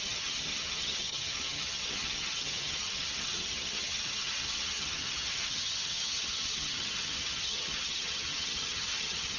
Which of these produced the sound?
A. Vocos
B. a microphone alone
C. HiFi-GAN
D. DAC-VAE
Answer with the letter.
C